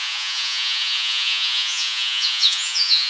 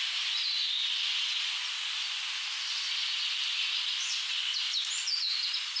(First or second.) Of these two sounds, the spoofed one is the first